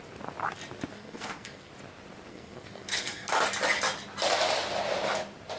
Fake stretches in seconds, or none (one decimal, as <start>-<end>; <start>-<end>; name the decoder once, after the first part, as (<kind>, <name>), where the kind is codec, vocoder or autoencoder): 0.9-1.7 (codec, SNAC); 2.3-3.3